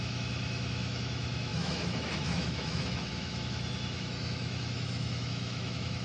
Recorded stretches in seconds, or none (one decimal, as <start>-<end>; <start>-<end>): none